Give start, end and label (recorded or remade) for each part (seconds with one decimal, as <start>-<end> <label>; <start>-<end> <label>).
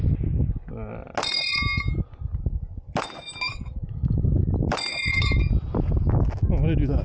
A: 0.0-3.5 recorded; 3.5-4.4 remade; 4.4-4.9 recorded; 4.9-5.5 remade; 5.5-7.0 recorded